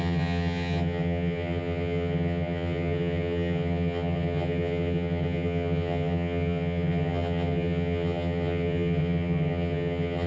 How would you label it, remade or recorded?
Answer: remade